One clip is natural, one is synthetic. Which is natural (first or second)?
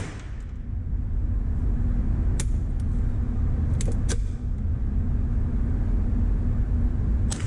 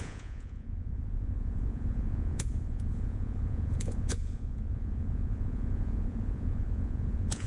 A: first